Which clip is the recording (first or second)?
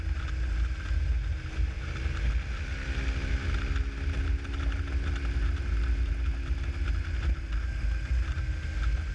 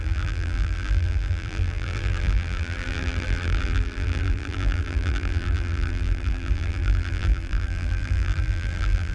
first